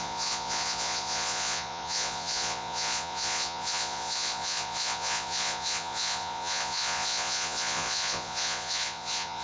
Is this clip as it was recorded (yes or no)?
no